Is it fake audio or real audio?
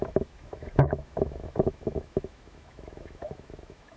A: fake